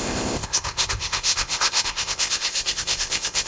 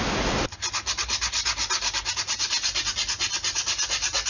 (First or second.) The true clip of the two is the second